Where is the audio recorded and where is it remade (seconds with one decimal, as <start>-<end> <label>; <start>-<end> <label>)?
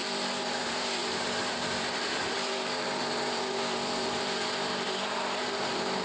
0.0-6.0 remade